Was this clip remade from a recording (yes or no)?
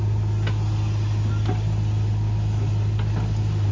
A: no